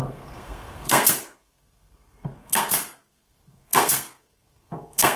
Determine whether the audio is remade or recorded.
remade